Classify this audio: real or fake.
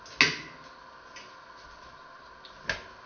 real